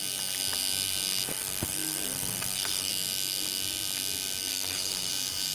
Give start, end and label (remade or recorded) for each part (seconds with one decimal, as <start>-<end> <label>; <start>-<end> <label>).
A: 0.0-1.3 recorded; 1.3-2.9 remade; 2.9-4.5 recorded; 4.5-5.1 remade; 5.1-5.5 recorded